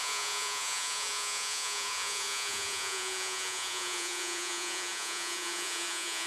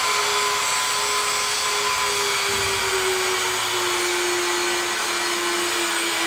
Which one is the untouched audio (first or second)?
second